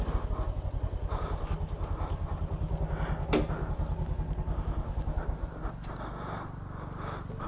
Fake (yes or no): no